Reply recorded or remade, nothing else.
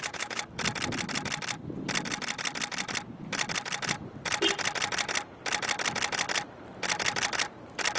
recorded